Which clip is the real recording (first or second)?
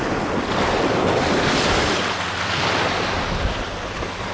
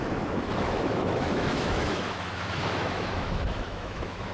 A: first